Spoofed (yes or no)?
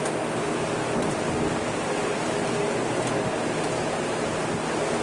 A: no